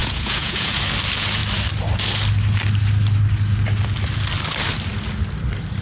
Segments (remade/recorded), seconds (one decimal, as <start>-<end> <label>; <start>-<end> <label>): 0.0-0.8 remade; 0.8-5.8 recorded